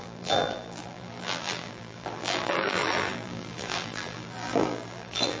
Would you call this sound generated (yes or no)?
yes